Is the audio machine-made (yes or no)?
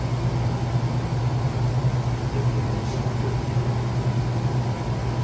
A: no